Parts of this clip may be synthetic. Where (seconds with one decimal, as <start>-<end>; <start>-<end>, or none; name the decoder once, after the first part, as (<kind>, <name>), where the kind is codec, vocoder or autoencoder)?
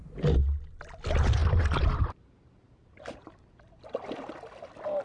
1.4-4.3 (vocoder, BigVGAN v2)